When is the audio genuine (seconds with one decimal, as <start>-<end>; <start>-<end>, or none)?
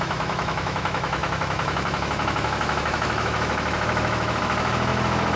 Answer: none